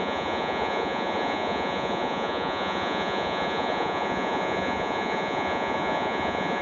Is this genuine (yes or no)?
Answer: no